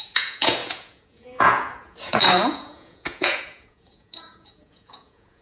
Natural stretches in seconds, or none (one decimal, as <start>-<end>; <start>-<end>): none